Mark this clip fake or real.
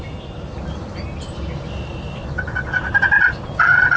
real